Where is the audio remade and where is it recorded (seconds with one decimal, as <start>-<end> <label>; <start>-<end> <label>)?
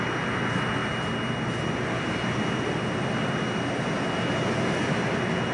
0.0-5.5 recorded